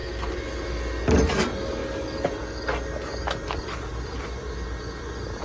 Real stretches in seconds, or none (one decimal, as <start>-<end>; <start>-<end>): 0.0-5.4